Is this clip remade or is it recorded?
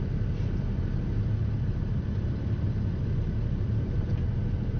recorded